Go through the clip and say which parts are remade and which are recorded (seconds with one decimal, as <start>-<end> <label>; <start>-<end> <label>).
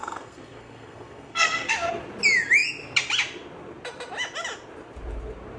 0.0-1.7 remade; 1.7-5.6 recorded